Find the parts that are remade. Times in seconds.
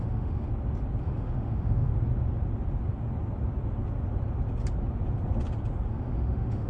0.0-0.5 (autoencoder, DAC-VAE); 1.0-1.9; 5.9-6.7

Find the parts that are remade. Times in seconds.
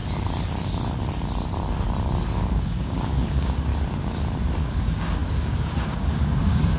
2.5-3.7 (codec, DAC); 4.5-6.8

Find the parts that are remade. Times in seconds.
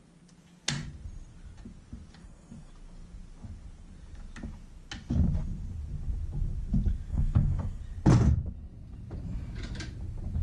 2.2-2.7 (codec, SNAC); 7.1-7.8